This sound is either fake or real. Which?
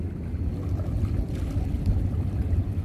fake